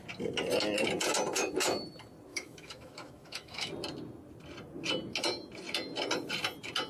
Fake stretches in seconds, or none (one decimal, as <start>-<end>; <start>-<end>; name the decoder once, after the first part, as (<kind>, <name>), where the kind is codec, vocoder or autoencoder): 2.3-3.7 (autoencoder, DAC-VAE)